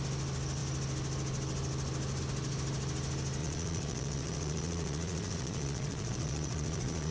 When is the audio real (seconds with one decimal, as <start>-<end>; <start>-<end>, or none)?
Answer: 0.0-3.4